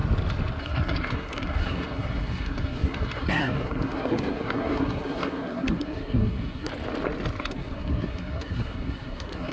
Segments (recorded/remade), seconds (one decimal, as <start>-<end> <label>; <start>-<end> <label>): 0.0-0.6 recorded; 0.6-6.7 remade; 6.7-7.5 recorded; 7.5-9.5 remade